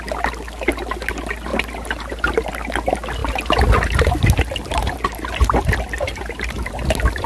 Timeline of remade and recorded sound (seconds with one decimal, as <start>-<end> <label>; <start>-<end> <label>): 0.0-7.3 recorded